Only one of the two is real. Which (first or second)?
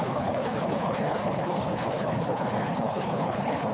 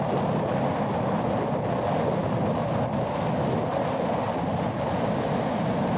second